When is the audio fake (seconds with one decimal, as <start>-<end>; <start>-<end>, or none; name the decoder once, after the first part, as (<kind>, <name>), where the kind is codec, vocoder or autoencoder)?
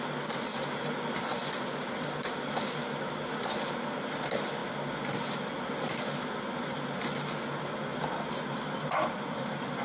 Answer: none